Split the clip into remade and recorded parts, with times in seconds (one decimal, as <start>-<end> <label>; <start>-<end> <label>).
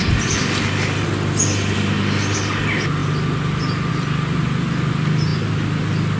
0.0-6.2 recorded